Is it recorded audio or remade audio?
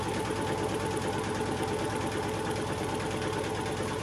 recorded